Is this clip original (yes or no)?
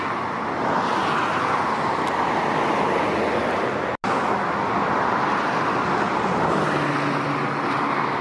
yes